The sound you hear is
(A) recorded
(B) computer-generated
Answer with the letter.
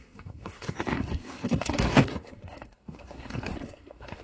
B